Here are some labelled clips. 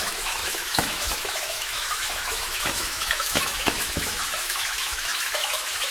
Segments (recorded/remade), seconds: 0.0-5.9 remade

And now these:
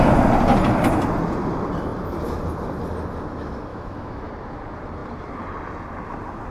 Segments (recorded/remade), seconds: 0.0-3.7 recorded; 3.7-4.3 remade; 4.3-6.5 recorded

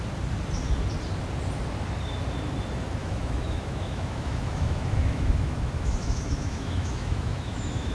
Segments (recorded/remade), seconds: 0.0-3.0 recorded; 3.0-7.9 remade

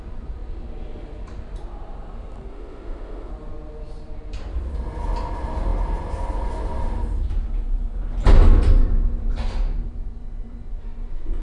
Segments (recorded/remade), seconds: 0.0-2.5 recorded; 2.5-3.3 remade; 3.3-11.4 recorded

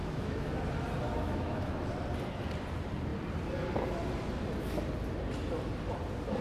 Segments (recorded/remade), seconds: 0.0-0.6 remade; 0.6-1.1 recorded; 1.1-1.8 remade; 1.8-6.4 recorded

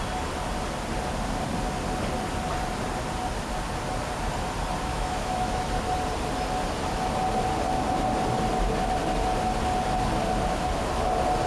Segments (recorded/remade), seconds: 0.0-4.9 recorded; 4.9-5.6 remade; 5.6-11.5 recorded

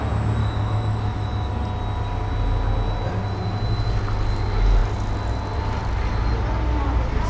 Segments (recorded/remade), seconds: 0.0-0.4 recorded; 0.4-1.5 remade; 1.5-7.3 recorded

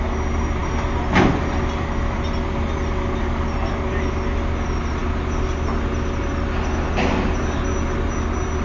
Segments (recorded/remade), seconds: 0.0-8.6 recorded